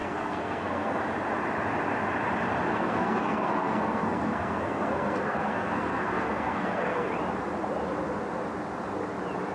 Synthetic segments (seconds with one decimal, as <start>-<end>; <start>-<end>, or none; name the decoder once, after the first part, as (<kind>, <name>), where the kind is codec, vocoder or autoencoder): 0.0-1.0 (codec, SNAC); 2.7-7.1